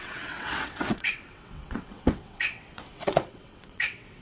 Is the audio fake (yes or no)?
yes